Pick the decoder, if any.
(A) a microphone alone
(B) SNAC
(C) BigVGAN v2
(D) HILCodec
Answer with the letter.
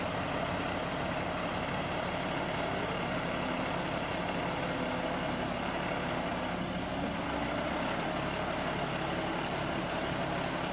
A